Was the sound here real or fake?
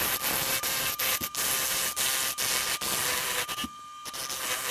real